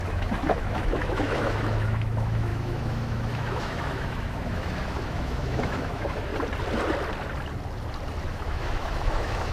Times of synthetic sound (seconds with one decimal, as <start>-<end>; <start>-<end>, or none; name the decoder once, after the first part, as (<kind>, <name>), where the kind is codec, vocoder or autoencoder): 0.0-6.3 (autoencoder, DAC-VAE); 8.3-9.5